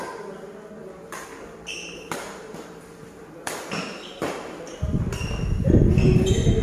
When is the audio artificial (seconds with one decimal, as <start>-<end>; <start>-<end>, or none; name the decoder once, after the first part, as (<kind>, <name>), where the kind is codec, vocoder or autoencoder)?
0.8-4.8 (vocoder, BigVGAN v2)

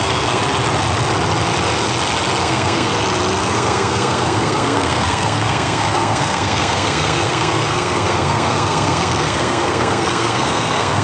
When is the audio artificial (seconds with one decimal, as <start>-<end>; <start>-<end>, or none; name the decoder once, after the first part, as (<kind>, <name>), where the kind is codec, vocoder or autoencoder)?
0.0-0.4 (codec, SNAC); 2.4-2.9; 3.4-11.0

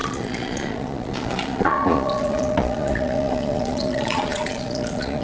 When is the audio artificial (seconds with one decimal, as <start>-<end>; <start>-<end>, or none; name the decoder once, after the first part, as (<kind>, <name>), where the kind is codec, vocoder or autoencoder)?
0.0-5.2 (vocoder, Vocos)

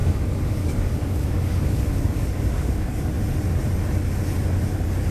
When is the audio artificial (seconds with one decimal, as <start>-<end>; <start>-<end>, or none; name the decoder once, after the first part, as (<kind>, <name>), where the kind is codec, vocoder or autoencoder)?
0.0-3.1 (codec, DAC)

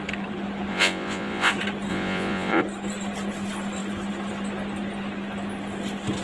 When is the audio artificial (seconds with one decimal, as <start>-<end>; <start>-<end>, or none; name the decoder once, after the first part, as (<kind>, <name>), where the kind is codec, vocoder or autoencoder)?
0.7-1.5 (vocoder, Vocos); 1.9-2.6

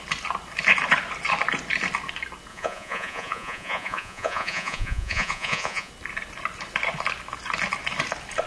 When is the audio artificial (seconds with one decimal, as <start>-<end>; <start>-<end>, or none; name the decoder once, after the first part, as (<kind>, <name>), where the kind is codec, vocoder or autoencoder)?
2.5-5.9 (vocoder, Vocos)